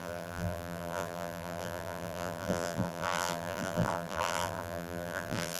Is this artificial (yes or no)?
yes